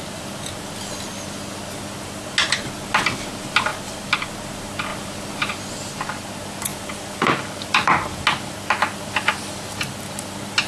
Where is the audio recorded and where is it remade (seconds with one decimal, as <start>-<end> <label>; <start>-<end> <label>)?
0.0-10.7 recorded